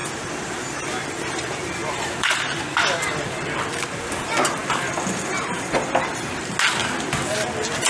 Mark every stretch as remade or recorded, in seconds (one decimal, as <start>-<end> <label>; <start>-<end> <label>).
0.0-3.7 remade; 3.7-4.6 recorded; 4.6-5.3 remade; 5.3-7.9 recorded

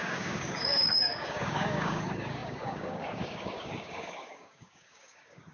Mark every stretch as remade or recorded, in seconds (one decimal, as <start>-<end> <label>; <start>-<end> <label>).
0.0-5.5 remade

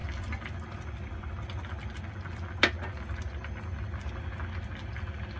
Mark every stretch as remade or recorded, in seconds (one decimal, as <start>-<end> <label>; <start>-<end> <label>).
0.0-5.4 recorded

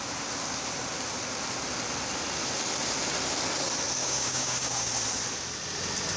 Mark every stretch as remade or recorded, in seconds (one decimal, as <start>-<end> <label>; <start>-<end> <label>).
0.0-4.0 recorded; 4.0-4.9 remade; 4.9-6.2 recorded

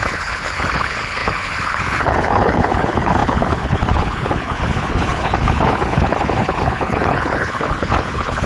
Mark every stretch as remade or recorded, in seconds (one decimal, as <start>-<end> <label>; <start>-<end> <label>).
0.0-8.5 remade